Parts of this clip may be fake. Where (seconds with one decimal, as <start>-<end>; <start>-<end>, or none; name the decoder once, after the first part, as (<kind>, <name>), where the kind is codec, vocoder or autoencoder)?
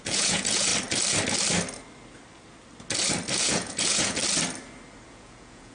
0.0-0.7 (vocoder, Vocos); 3.4-4.2; 5.1-5.7